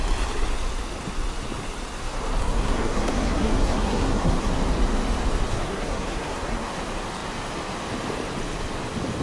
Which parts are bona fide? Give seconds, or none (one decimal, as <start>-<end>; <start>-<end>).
0.0-2.4; 4.5-5.5; 6.7-9.2